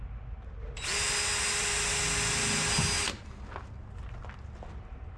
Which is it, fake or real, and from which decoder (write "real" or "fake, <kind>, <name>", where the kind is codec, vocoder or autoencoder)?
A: real